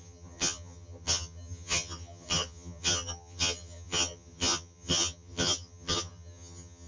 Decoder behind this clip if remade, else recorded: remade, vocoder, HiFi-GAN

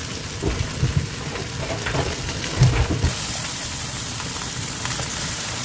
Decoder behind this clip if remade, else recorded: recorded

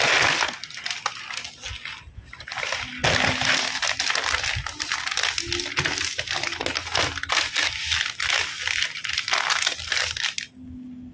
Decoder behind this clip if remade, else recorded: recorded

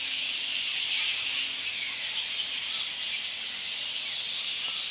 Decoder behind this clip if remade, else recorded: recorded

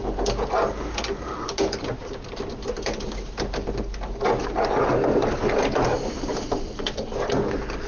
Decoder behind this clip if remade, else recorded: recorded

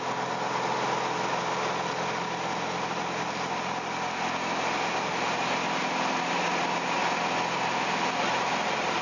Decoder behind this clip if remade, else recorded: recorded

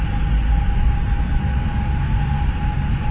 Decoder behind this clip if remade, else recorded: recorded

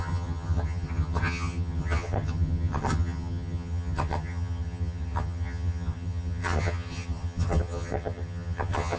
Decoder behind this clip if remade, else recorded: remade, vocoder, HiFi-GAN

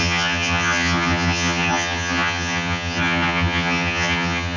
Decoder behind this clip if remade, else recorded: remade, vocoder, HiFi-GAN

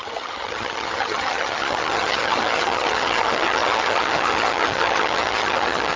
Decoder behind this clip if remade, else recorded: remade, vocoder, HiFi-GAN